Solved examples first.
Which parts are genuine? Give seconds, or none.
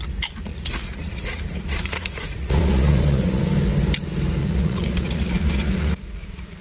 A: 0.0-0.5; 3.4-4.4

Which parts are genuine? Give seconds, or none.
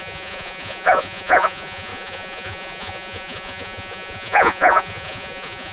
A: none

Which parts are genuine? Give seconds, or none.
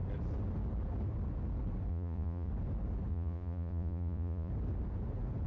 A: 0.0-1.9; 2.5-3.1; 4.5-5.5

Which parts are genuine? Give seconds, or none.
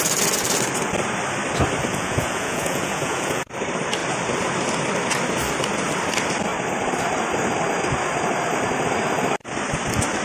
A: 0.0-1.9; 3.5-10.2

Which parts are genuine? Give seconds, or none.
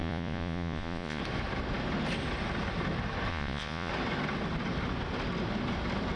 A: 1.2-3.3; 3.9-6.2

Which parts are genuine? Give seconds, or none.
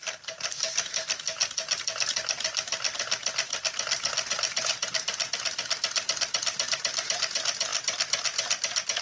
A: 0.0-9.0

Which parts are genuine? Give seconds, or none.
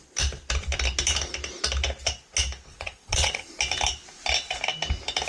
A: 0.0-2.7; 3.5-5.3